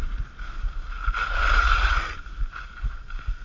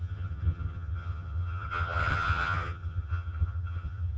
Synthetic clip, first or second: second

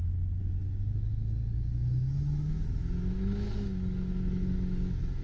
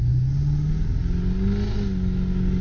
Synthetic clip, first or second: first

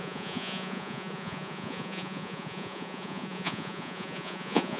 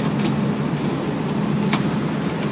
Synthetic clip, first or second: first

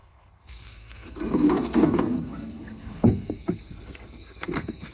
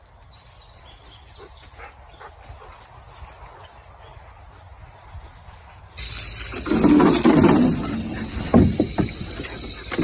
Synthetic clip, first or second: first